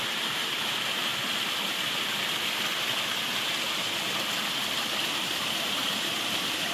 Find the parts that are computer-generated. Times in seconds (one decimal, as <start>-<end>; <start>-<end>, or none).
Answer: 0.0-1.1; 5.1-6.7